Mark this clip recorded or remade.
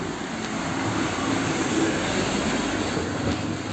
recorded